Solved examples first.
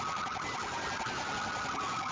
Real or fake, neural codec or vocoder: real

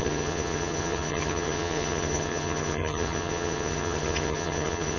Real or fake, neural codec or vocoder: fake, vocoder, HiFi-GAN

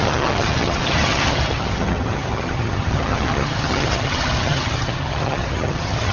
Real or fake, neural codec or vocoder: fake, vocoder, HiFi-GAN